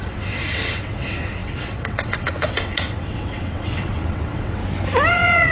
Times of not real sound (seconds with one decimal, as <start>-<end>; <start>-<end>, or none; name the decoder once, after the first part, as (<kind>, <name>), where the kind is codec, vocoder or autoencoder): 0.0-4.6 (vocoder, WaveNeXt); 5.1-5.5